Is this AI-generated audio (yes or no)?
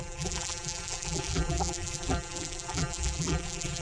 yes